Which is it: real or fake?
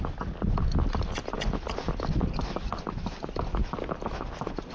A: real